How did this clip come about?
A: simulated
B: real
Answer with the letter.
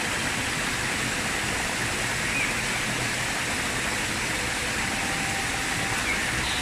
B